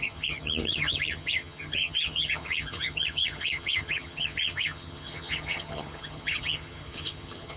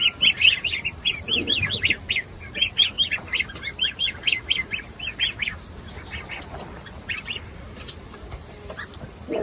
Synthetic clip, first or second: first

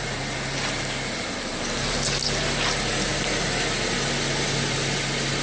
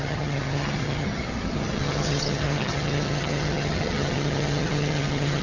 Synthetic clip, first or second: second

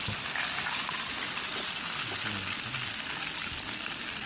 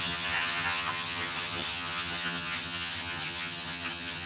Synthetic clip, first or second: second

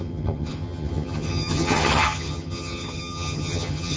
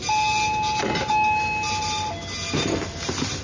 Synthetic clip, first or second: first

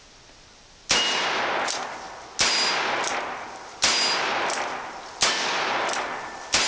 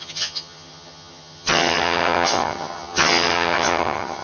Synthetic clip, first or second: second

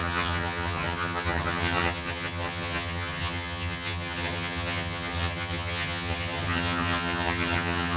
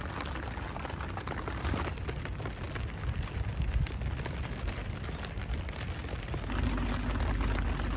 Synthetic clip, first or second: first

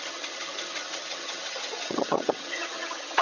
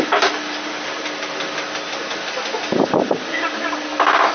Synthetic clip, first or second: first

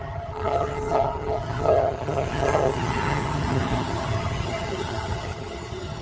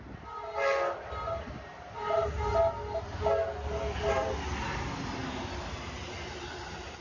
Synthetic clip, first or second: first